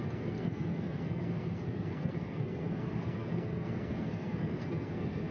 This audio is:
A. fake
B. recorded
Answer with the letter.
A